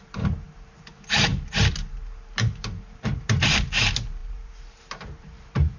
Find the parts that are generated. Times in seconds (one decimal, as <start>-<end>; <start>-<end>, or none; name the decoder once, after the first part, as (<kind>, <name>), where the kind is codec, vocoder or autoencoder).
0.0-5.8 (vocoder, BigVGAN v2)